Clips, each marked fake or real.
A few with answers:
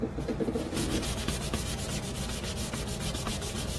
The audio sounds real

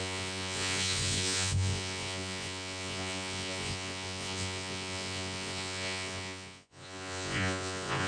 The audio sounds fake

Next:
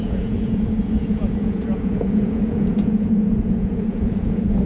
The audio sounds fake